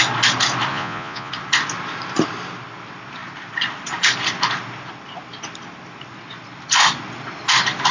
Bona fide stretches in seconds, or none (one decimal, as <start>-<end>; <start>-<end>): 0.0-0.7; 1.3-7.9